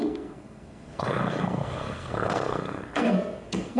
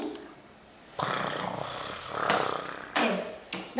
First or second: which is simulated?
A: first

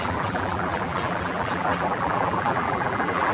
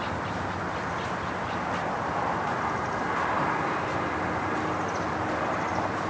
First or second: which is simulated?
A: first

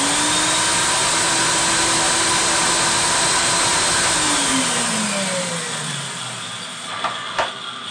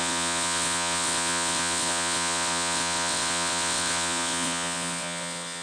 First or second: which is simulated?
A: second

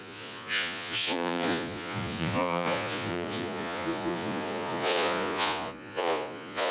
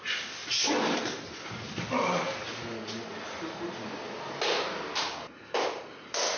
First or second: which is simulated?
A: first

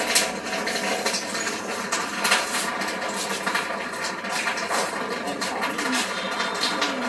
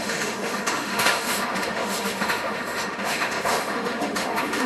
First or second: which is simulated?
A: second